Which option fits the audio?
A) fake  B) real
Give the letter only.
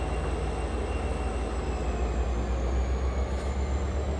B